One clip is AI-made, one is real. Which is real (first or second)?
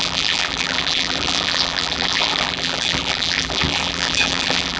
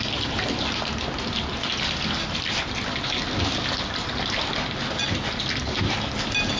second